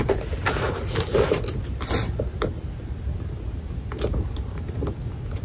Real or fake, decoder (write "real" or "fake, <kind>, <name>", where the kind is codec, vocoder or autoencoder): real